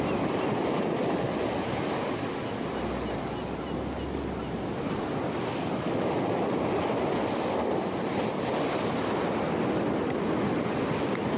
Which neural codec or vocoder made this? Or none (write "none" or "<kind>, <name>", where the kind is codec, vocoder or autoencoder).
none